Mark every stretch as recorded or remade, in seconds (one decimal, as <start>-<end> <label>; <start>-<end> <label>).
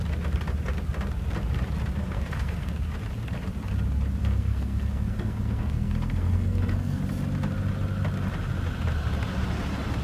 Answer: 0.0-2.0 recorded; 2.0-2.7 remade; 2.7-4.2 recorded; 4.2-7.0 remade; 7.0-10.0 recorded